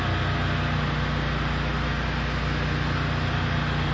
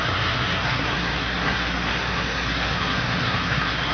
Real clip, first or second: first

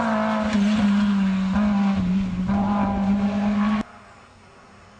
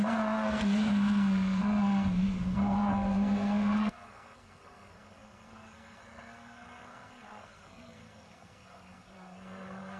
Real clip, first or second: first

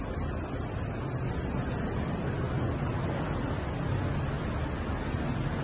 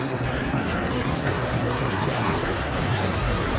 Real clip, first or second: first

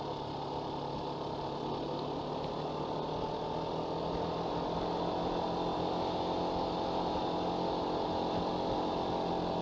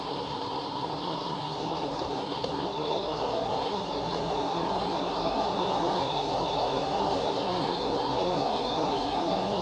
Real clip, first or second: first